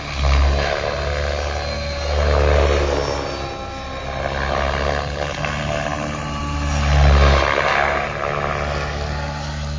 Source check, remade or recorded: recorded